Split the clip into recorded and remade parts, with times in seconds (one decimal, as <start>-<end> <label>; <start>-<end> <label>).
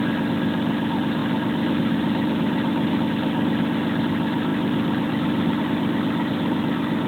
0.0-7.1 recorded